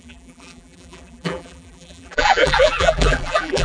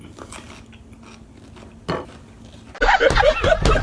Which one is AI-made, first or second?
first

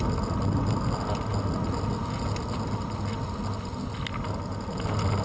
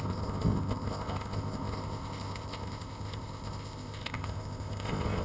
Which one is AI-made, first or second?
second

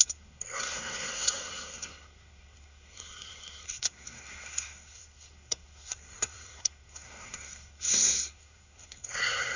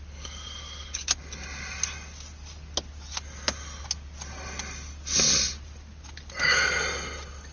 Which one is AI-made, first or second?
first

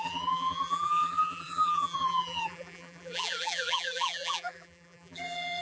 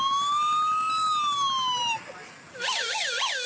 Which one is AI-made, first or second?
first